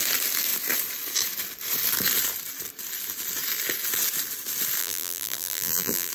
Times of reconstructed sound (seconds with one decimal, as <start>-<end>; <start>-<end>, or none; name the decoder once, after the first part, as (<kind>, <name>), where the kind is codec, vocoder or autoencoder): 4.8-6.1 (vocoder, BigVGAN v2)